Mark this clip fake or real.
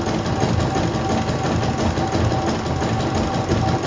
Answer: real